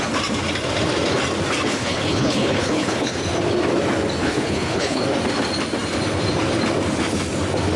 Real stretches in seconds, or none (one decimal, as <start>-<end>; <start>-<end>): 0.0-1.7; 3.2-4.2; 5.0-7.8